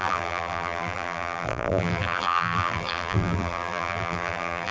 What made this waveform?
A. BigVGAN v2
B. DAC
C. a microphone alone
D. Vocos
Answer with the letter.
A